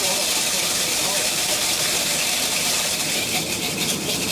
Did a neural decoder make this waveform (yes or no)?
yes